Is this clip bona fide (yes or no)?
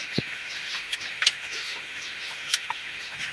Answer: no